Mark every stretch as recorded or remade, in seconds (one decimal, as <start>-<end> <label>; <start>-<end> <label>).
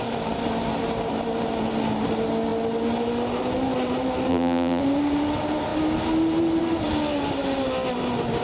0.0-4.3 recorded; 4.3-4.8 remade; 4.8-8.4 recorded